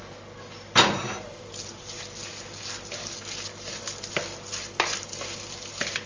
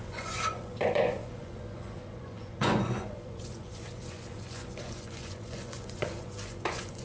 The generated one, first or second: second